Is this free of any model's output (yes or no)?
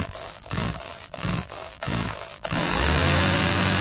no